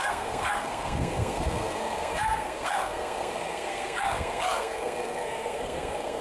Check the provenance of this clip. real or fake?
fake